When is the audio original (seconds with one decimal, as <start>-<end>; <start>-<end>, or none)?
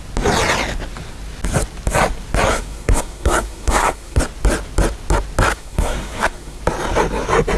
0.0-2.5; 4.2-5.5; 6.6-7.6